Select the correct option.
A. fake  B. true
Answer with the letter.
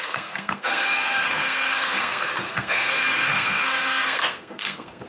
A